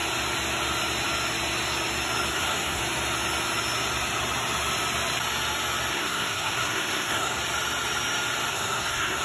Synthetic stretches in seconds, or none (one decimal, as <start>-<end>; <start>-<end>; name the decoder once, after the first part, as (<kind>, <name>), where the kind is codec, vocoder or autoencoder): 2.3-2.8 (codec, SNAC); 5.9-7.4; 8.5-9.2